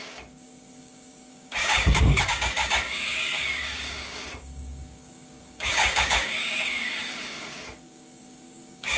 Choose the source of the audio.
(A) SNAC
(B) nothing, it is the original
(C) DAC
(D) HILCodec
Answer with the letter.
C